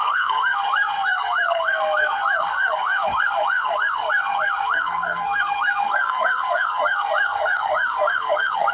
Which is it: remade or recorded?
remade